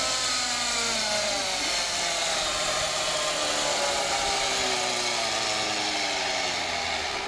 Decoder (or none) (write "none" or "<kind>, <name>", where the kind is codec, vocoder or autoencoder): none